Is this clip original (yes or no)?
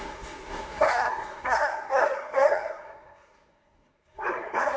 no